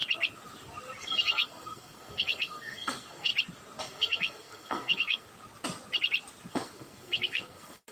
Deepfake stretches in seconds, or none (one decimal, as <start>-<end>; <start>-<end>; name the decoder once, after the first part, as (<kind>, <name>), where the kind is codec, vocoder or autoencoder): 1.0-3.3 (codec, SNAC); 3.8-5.3; 6.5-7.9